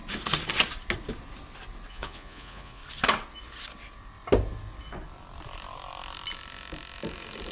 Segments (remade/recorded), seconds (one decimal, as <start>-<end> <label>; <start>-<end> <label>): 0.0-1.9 recorded; 1.9-2.8 remade; 2.8-7.5 recorded